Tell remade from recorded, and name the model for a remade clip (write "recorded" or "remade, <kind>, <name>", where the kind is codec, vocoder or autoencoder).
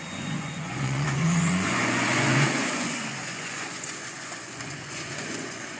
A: remade, vocoder, Vocos